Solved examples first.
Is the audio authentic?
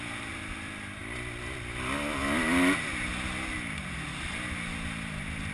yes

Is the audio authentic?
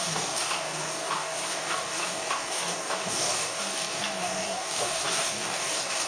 no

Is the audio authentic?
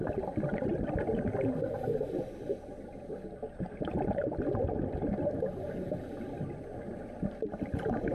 yes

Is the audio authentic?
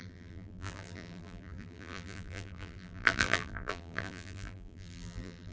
no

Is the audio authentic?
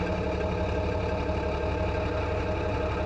yes